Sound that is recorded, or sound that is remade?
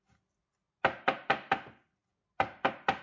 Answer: recorded